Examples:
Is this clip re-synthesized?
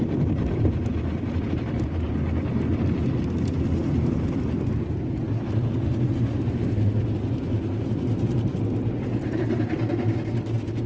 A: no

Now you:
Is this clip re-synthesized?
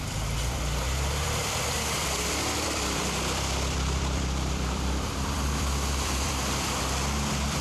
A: yes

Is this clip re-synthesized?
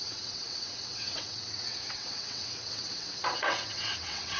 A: yes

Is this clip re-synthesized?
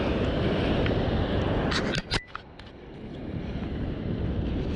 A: no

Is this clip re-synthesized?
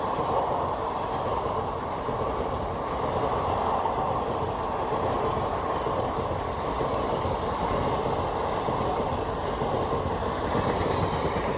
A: no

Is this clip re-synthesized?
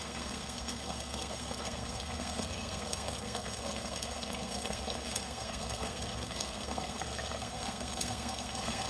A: yes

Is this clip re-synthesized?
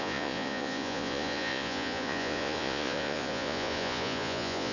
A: yes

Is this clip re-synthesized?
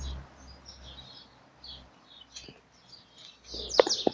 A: no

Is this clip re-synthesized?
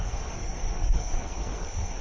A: yes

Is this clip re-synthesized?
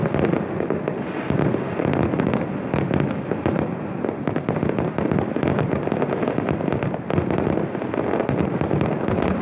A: no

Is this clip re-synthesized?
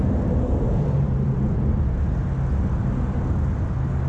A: no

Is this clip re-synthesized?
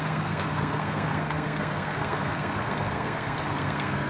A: yes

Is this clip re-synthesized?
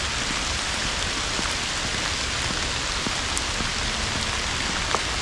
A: no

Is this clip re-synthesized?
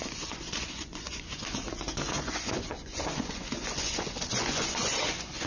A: yes